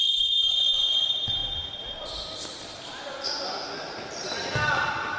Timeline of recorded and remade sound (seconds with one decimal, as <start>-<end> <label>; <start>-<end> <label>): 0.0-5.2 recorded